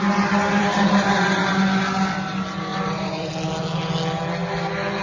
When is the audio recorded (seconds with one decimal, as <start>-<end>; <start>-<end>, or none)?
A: 0.0-0.6; 1.3-2.7; 3.3-5.0